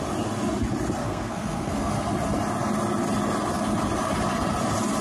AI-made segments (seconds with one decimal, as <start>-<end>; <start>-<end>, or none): 1.0-1.9